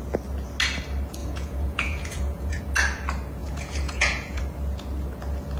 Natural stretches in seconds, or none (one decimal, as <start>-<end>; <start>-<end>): 0.0-1.2; 2.6-3.4; 4.4-5.6